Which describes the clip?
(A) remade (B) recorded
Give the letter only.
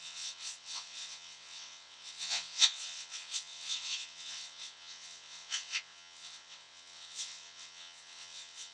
A